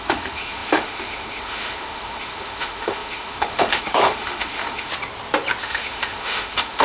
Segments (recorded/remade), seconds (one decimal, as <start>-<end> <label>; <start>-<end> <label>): 0.0-4.9 remade; 4.9-5.6 recorded; 5.6-6.8 remade